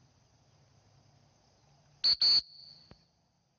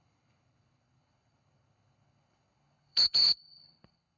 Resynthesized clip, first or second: second